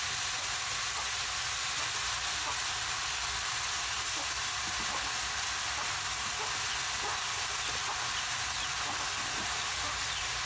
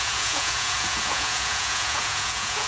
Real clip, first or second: first